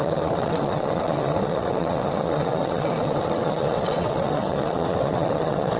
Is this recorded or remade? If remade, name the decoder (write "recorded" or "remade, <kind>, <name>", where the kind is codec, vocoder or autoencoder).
remade, vocoder, WaveNeXt